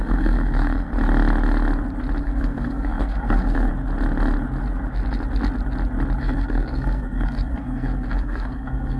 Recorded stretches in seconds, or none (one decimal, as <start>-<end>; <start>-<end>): 0.9-2.2; 3.7-6.2